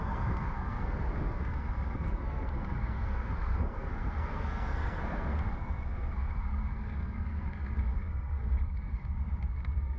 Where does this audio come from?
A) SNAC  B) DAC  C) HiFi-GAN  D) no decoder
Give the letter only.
A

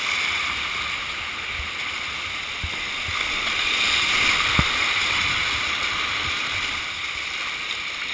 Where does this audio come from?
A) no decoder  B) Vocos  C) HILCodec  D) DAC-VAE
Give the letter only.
A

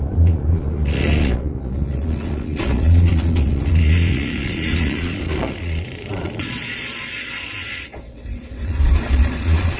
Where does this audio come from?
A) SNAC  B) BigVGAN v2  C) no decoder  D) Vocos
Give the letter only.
D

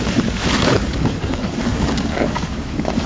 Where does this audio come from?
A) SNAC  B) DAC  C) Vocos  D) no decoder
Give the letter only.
B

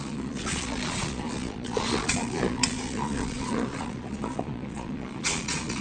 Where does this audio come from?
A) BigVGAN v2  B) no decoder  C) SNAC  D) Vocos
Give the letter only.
D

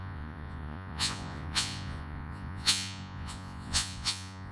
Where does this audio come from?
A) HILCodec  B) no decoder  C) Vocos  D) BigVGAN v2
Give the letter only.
C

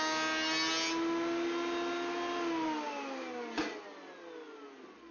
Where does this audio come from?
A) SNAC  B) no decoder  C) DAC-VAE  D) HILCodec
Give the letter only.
B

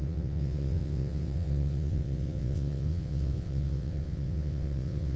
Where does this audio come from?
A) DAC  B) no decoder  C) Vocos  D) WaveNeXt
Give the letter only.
D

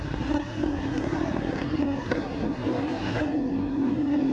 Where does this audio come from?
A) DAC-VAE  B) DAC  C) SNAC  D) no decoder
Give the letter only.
C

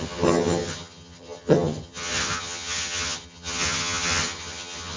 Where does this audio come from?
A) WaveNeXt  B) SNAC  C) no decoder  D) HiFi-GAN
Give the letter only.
D